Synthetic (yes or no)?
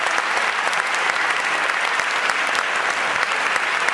no